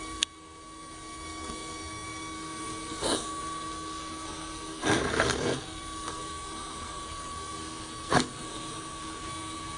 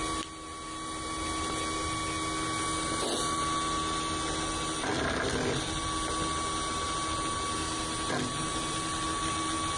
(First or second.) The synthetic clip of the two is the first